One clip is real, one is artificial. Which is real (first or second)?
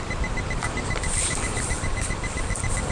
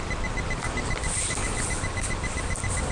second